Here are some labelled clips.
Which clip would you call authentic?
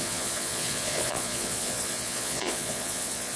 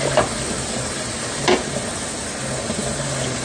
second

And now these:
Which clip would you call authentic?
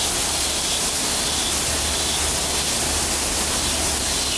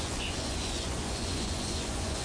first